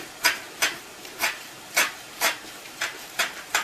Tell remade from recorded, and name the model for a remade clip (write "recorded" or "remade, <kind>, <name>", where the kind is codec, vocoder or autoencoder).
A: remade, vocoder, BigVGAN v2